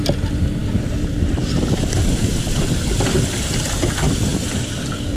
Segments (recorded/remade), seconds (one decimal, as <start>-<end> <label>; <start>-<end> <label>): 0.0-0.6 recorded; 0.6-2.1 remade; 2.1-4.3 recorded; 4.3-5.2 remade